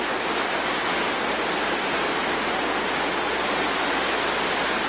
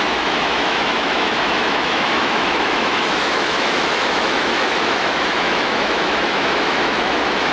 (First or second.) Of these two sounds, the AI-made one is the second